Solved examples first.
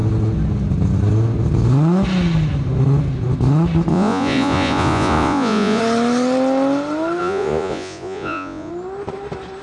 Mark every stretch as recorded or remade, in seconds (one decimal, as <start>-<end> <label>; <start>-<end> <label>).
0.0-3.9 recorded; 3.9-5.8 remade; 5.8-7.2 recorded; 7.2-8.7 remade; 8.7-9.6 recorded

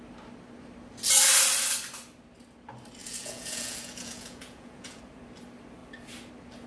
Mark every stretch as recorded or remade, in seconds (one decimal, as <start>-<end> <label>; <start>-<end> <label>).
0.0-3.0 recorded; 3.0-5.0 remade; 5.0-6.7 recorded

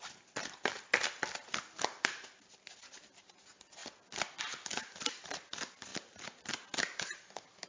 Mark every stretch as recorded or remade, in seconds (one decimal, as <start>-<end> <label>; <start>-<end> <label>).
0.0-7.7 recorded